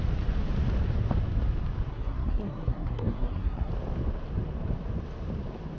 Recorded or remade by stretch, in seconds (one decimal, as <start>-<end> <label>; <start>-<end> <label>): 0.0-1.9 recorded; 1.9-3.7 remade; 3.7-5.8 recorded